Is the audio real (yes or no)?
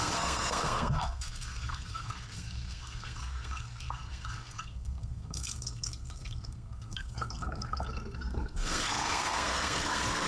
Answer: no